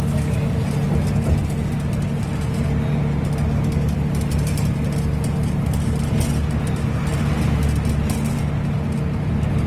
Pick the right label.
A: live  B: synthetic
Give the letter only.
A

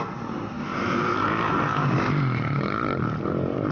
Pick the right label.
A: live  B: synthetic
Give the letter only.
B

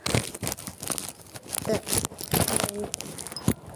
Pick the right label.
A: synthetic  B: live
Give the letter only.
B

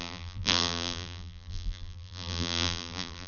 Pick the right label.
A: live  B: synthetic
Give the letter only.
B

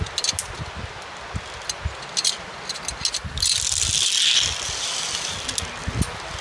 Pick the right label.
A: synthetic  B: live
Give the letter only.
B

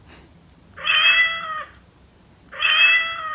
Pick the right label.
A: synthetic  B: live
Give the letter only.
B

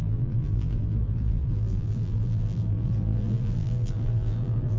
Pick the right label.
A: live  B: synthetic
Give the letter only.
B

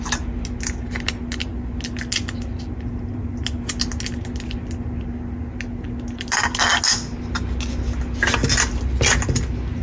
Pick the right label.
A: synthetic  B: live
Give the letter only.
B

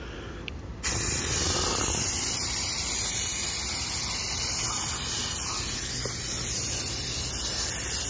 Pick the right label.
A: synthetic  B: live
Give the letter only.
A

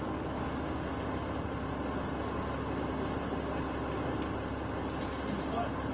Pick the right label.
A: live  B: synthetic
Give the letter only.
A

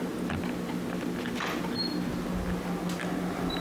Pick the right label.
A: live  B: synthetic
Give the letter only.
A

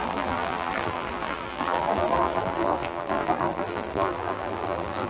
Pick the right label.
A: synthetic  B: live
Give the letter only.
A